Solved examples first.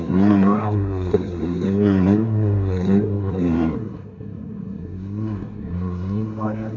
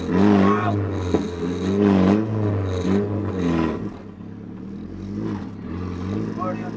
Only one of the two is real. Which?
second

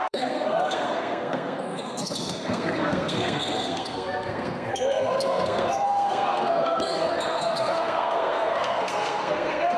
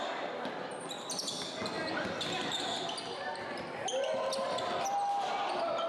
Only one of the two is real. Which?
second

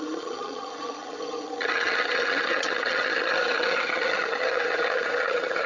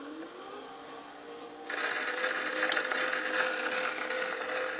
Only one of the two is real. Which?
second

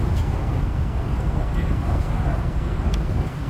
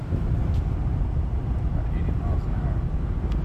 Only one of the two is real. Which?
second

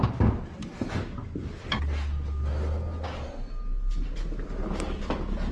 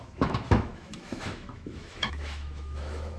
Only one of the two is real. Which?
first